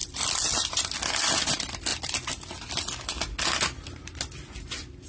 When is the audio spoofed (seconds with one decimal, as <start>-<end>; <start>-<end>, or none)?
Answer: none

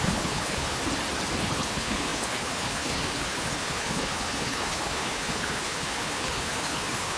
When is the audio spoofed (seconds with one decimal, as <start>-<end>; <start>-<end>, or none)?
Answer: 0.0-0.8; 1.4-7.2

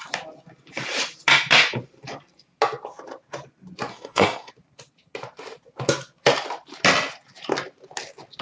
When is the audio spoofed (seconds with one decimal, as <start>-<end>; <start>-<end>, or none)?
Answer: 3.9-4.5